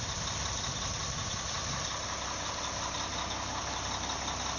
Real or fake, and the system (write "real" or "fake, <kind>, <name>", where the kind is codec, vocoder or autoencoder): real